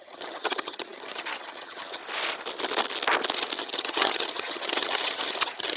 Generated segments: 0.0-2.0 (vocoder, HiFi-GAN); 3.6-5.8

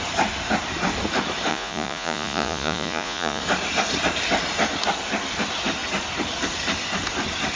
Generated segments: 1.5-3.4 (vocoder, Vocos)